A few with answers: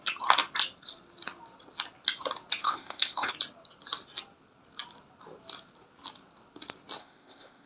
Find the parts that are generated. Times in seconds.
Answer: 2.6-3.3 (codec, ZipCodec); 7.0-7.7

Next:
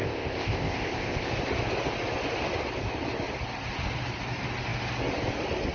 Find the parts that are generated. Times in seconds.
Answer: 0.0-1.3 (codec, ZipCodec)

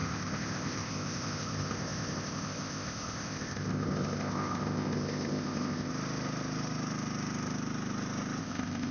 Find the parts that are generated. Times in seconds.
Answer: 0.0-5.9 (codec, ZipCodec); 8.4-8.9

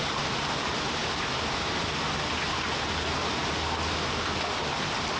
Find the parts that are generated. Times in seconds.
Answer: none

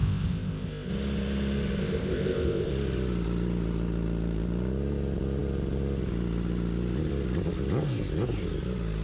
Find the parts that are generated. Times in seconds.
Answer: 0.0-0.9 (codec, ZipCodec); 1.8-2.7

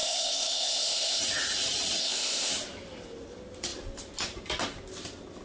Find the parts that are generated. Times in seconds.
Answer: 0.0-1.2 (codec, ZipCodec); 2.0-2.5

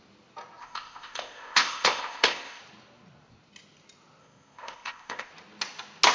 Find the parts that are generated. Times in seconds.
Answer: 0.6-2.6 (codec, ZipCodec); 4.2-5.3